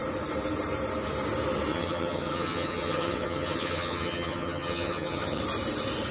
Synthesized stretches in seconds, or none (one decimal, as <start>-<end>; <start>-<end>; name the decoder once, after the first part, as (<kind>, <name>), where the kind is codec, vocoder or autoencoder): 1.7-5.4 (vocoder, HiFi-GAN)